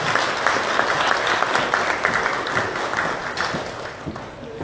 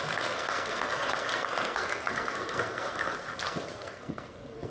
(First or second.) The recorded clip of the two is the first